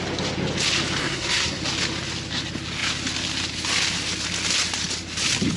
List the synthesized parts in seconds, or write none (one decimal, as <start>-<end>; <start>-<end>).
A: 1.0-1.6